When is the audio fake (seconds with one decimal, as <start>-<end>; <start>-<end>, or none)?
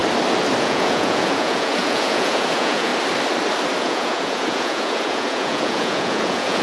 0.6-2.9; 3.8-6.6